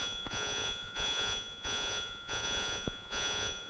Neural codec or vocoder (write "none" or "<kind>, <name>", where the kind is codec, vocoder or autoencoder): vocoder, Vocos